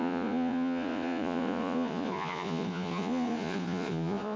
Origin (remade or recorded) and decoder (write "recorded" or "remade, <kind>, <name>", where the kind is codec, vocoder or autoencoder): remade, vocoder, Vocos